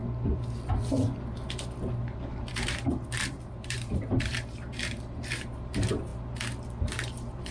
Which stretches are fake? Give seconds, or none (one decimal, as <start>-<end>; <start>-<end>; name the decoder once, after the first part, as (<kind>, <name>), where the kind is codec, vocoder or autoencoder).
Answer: 2.4-6.1 (vocoder, BigVGAN v2); 6.8-7.5